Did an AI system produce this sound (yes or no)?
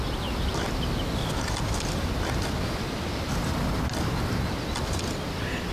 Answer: no